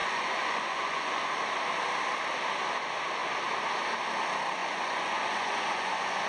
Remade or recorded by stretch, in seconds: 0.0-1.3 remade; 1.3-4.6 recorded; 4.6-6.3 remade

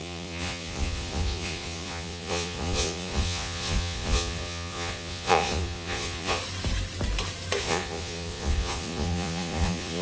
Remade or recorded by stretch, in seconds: 0.0-6.4 remade; 6.4-7.6 recorded; 7.6-10.0 remade

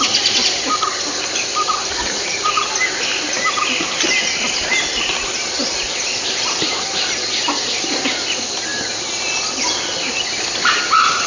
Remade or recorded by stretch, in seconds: 0.0-1.9 recorded; 1.9-2.6 remade; 2.6-11.3 recorded

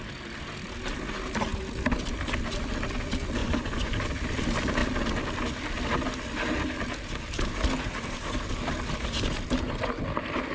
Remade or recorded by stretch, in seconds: 0.0-3.4 recorded; 3.4-4.0 remade; 4.0-10.5 recorded

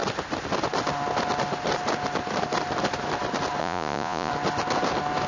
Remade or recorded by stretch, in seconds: 0.0-3.6 recorded; 3.6-4.3 remade; 4.3-5.3 recorded

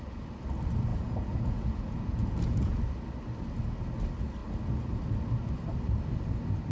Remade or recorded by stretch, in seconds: 0.0-0.9 recorded; 0.9-2.8 remade; 2.8-6.7 recorded